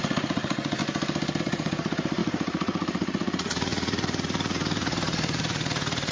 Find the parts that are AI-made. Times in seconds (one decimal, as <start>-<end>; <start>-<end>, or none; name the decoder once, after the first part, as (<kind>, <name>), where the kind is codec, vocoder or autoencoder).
0.0-0.8 (vocoder, Vocos); 1.4-6.1